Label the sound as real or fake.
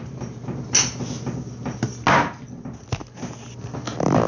real